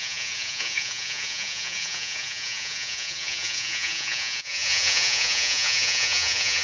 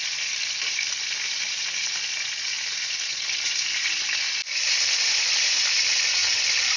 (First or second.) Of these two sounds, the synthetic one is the first